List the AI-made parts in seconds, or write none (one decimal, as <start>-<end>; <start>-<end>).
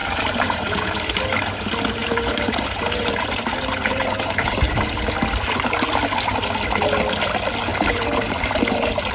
0.0-1.2; 2.0-5.0; 7.7-8.5